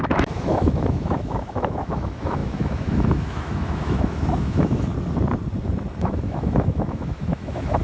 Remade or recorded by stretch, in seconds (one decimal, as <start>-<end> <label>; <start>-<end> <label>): 0.0-4.9 remade; 4.9-6.0 recorded; 6.0-7.8 remade